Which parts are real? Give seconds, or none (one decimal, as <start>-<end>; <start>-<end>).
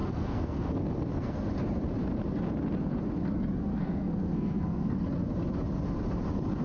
1.5-3.7; 5.0-6.6